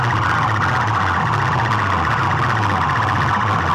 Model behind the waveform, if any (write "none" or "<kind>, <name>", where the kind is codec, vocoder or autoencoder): none